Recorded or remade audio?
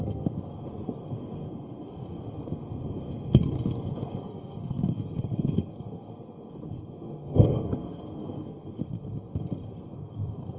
remade